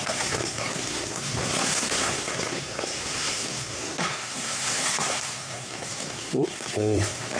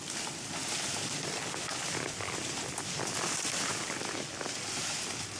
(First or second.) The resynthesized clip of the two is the first